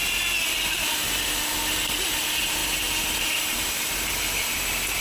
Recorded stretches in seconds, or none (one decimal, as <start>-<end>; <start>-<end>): 0.0-5.0